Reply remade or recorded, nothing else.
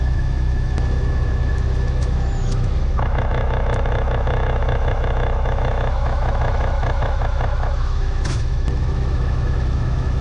remade